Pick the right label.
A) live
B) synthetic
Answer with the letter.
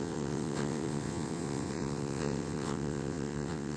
B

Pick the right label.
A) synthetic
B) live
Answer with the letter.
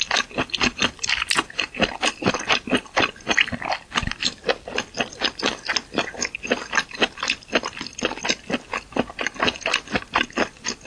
B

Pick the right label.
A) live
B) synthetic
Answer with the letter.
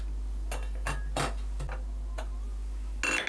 A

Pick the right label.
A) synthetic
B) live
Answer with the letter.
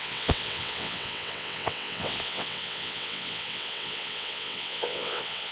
A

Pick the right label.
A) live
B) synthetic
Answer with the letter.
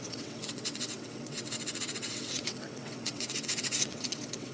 B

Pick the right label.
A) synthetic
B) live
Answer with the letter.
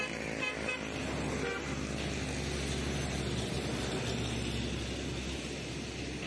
B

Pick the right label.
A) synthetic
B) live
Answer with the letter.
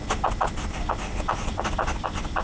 B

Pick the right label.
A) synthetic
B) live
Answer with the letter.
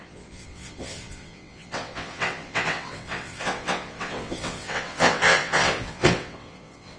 A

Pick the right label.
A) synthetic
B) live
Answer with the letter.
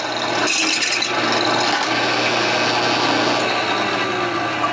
B